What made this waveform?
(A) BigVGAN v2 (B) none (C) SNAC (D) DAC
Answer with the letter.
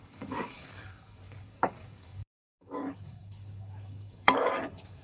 D